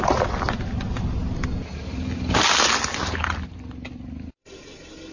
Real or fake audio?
real